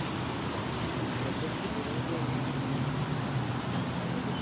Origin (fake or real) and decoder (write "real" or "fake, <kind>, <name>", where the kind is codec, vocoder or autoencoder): real